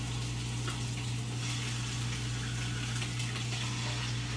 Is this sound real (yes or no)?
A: yes